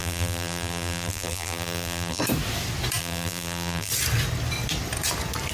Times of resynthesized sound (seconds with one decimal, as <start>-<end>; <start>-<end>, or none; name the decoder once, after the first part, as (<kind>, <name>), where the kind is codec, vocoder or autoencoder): 0.0-2.2 (vocoder, BigVGAN v2); 3.0-3.9